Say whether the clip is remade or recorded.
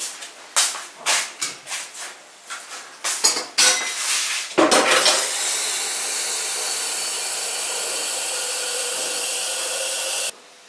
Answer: recorded